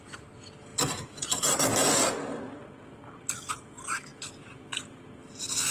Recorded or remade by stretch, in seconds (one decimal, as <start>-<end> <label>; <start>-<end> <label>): 0.0-5.7 recorded